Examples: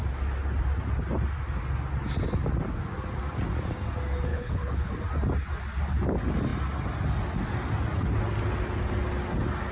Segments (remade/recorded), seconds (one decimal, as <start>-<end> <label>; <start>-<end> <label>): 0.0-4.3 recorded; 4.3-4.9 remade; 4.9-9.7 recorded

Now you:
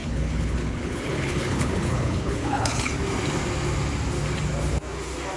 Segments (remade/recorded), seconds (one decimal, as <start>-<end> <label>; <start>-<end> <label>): 0.0-2.9 remade; 2.9-5.4 recorded

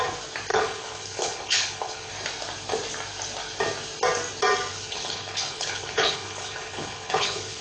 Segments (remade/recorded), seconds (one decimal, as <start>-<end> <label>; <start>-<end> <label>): 0.0-0.5 recorded; 0.5-2.1 remade; 2.1-4.7 recorded; 4.7-7.6 remade